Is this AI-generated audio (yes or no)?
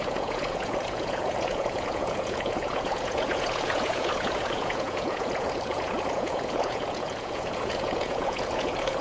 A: yes